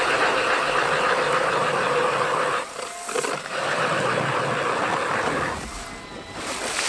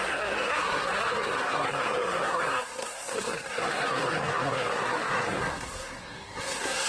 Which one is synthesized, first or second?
second